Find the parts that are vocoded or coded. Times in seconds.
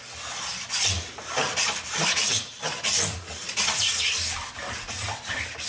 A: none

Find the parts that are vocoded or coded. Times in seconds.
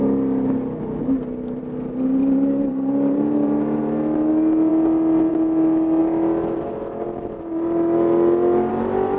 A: 2.2-3.8 (vocoder, BigVGAN v2)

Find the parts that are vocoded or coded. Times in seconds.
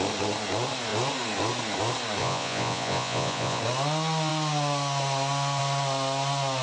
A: 2.2-3.6 (vocoder, Vocos)